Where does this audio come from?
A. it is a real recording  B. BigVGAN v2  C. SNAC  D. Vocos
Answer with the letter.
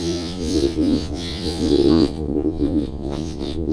D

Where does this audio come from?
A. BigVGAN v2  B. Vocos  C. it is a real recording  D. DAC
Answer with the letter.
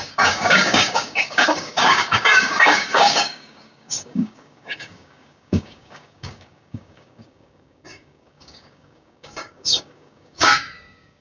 D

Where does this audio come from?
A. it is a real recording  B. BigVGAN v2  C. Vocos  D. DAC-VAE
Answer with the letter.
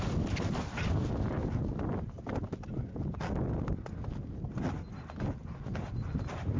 A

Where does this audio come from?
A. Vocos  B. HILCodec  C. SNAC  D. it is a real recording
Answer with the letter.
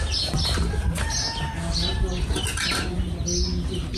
D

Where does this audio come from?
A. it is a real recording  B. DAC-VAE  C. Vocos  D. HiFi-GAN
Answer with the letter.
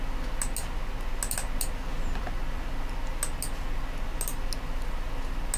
A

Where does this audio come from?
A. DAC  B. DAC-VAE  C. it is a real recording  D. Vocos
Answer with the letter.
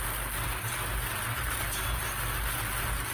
C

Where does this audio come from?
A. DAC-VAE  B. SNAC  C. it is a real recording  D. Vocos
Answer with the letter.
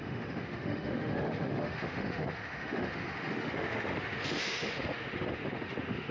A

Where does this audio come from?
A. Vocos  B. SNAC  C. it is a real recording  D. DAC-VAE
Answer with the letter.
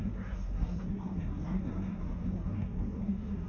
B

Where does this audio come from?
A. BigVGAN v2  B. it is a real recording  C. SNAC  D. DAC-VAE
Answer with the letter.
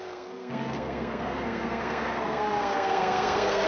C